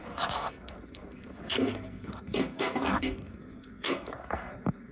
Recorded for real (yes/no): no